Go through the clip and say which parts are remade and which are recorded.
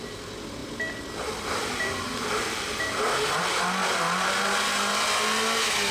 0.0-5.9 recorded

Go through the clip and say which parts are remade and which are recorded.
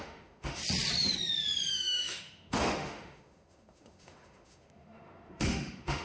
0.0-0.6 remade; 0.6-1.7 recorded; 1.7-6.0 remade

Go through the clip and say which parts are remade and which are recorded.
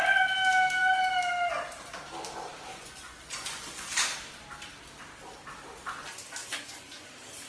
0.0-2.7 recorded; 2.7-3.9 remade; 3.9-6.4 recorded; 6.4-7.1 remade; 7.1-7.5 recorded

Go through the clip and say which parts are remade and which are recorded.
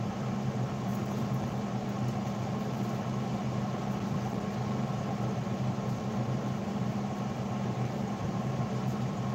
0.0-0.9 remade; 0.9-5.2 recorded; 5.2-9.3 remade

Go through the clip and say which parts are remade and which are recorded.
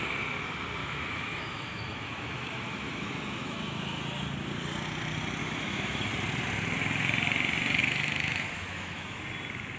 0.0-0.8 recorded; 0.8-4.0 remade; 4.0-5.4 recorded; 5.4-6.1 remade; 6.1-7.8 recorded; 7.8-9.2 remade; 9.2-9.8 recorded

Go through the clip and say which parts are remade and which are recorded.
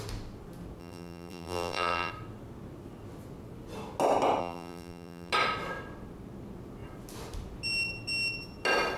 0.0-0.8 recorded; 0.8-2.1 remade; 2.1-4.4 recorded; 4.4-5.3 remade; 5.3-9.0 recorded